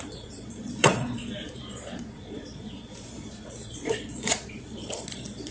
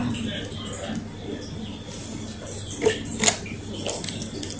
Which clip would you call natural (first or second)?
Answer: second